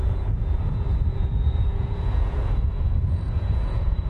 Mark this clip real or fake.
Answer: fake